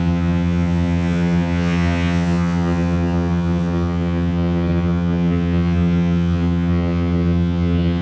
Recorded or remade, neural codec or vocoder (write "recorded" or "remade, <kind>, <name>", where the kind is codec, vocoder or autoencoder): remade, vocoder, HiFi-GAN